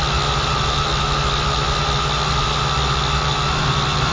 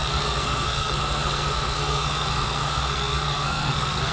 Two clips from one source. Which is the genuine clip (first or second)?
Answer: first